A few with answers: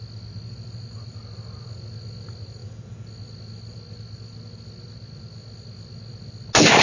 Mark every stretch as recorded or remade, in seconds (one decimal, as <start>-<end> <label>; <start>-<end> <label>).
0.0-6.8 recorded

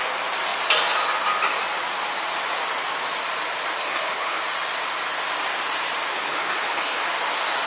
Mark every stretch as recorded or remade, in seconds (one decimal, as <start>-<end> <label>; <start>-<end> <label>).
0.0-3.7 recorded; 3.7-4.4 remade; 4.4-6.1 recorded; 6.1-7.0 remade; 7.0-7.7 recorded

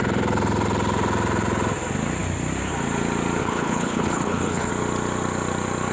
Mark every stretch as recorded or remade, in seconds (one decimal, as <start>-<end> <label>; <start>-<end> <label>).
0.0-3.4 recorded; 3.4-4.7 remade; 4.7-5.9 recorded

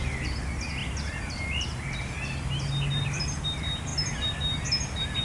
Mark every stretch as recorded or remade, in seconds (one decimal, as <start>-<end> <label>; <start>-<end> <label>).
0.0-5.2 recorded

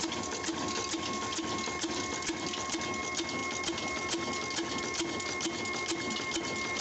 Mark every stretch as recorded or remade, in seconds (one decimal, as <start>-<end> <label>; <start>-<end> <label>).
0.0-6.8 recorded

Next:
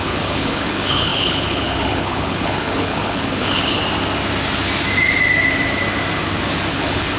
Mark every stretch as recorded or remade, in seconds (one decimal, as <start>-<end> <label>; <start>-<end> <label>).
0.0-3.8 remade; 3.8-6.7 recorded; 6.7-7.2 remade